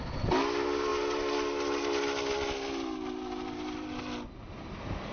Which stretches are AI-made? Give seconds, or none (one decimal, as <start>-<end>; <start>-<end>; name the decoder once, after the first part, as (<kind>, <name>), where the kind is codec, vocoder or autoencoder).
none